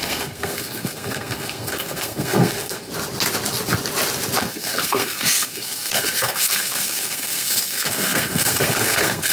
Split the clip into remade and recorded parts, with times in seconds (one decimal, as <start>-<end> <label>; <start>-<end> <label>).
0.0-2.9 remade; 2.9-4.4 recorded; 4.4-9.3 remade